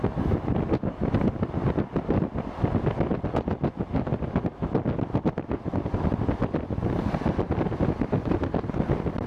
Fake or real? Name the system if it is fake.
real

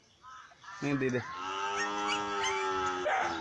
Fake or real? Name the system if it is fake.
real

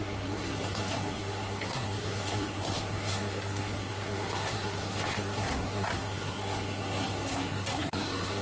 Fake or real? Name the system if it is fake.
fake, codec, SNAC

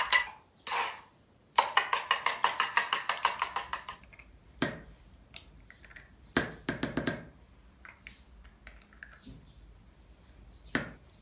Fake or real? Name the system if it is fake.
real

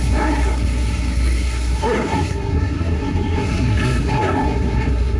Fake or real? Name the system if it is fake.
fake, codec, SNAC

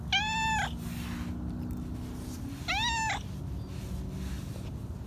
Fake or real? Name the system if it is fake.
real